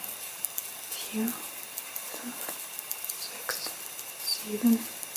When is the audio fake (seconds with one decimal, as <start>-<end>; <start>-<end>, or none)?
none